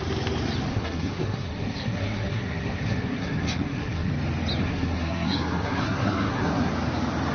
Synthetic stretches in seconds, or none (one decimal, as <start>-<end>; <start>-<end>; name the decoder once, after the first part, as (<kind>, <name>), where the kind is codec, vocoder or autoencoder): 0.7-4.1 (codec, SNAC); 4.6-6.7